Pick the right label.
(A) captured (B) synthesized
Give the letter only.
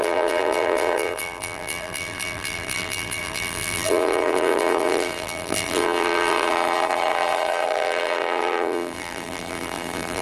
B